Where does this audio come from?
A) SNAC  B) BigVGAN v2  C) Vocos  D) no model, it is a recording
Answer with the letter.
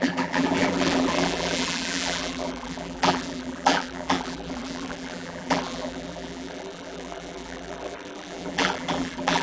B